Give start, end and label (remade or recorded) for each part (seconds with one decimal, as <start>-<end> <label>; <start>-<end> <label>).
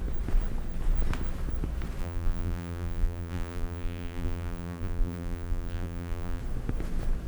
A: 0.0-2.0 recorded; 2.0-6.4 remade; 6.4-7.3 recorded